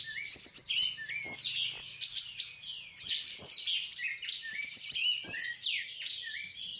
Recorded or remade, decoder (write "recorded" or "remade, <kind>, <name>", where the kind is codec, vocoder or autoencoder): recorded